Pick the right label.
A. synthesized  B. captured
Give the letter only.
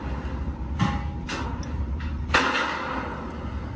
B